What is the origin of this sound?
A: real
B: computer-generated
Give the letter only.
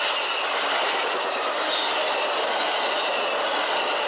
A